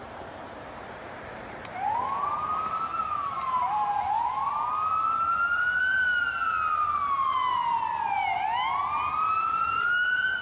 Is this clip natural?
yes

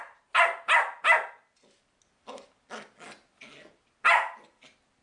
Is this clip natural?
yes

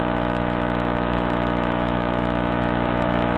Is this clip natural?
no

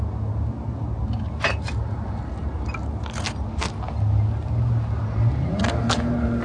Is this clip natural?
yes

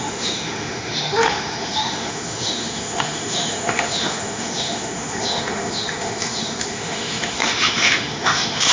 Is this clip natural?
no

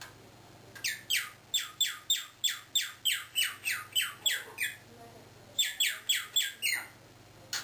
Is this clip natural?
yes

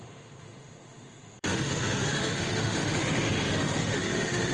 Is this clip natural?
no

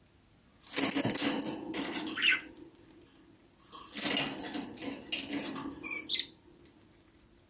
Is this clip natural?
yes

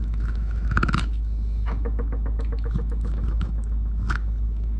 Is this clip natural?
no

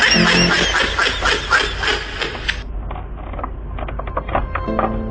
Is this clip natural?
yes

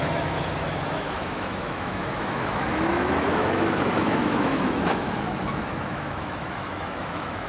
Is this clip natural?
no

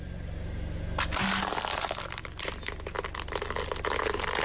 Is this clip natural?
yes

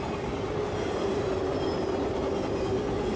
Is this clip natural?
yes